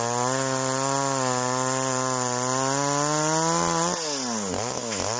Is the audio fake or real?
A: real